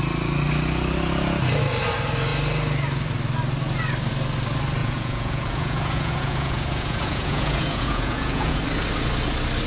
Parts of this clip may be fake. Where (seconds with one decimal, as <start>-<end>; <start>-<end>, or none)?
4.8-8.6